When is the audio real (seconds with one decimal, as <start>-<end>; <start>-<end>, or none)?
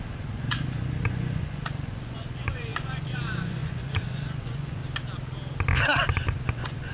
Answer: 4.8-6.5